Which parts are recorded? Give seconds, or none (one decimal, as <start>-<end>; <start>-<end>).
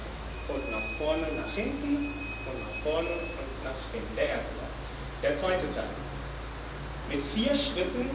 2.2-8.1